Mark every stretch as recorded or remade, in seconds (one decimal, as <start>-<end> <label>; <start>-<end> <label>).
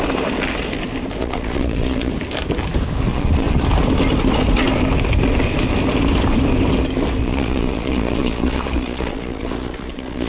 0.0-1.2 recorded; 1.2-2.1 remade; 2.1-3.1 recorded; 3.1-3.6 remade; 3.6-7.2 recorded; 7.2-10.3 remade